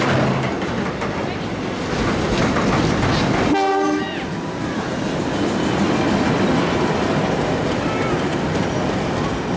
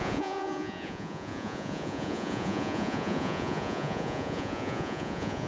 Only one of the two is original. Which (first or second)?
first